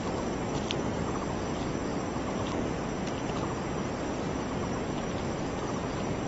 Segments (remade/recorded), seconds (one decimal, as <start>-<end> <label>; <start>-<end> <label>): 0.0-6.3 recorded